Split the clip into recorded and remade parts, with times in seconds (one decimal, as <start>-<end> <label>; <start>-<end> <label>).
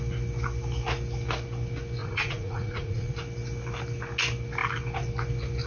0.0-2.0 recorded; 2.0-3.1 remade; 3.1-5.7 recorded